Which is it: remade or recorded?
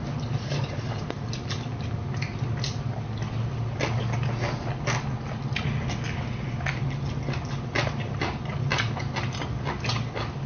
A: recorded